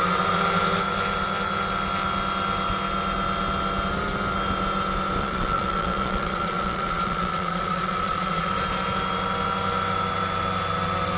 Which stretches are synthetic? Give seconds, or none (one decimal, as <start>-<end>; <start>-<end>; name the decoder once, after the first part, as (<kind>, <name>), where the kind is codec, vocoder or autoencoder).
5.2-8.5 (vocoder, Vocos)